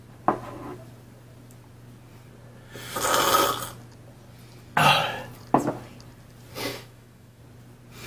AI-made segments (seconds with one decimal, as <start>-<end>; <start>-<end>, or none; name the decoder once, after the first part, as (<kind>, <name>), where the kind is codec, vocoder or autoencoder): 6.7-7.4 (autoencoder, DAC-VAE)